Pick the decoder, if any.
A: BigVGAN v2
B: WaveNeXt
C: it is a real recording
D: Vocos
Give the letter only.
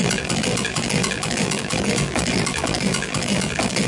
A